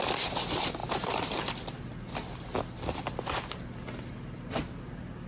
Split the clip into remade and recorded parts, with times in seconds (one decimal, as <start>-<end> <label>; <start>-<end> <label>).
0.0-5.3 recorded